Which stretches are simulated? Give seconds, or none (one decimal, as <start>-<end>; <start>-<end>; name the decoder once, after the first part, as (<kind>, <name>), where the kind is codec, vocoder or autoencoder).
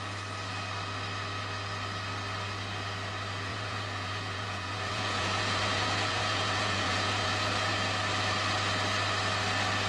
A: 3.5-7.7 (vocoder, Vocos)